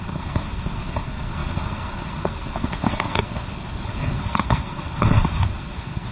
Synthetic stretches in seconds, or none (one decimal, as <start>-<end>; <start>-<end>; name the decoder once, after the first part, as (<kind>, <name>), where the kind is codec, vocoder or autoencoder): 0.0-6.1 (codec, SNAC)